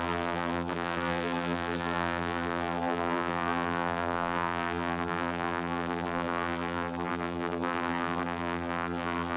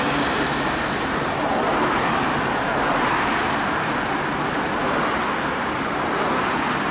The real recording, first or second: second